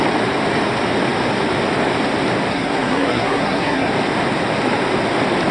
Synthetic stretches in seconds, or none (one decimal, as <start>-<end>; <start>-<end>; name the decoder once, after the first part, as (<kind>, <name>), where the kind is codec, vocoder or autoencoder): 2.5-3.9 (codec, SNAC)